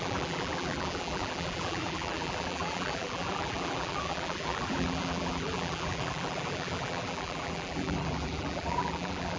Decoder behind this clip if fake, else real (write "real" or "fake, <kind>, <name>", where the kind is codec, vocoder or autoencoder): fake, vocoder, BigVGAN v2